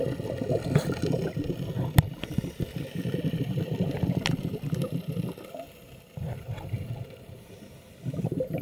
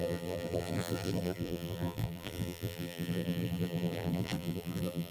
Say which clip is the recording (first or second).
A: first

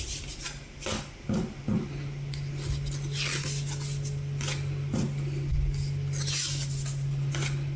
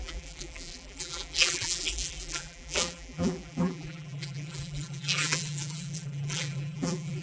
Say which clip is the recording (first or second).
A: first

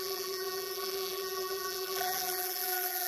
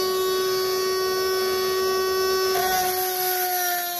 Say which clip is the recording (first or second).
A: second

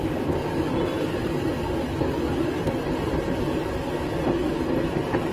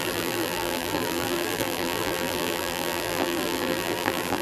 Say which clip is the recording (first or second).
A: first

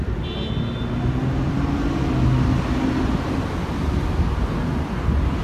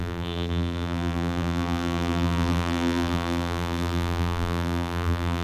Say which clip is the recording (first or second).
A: first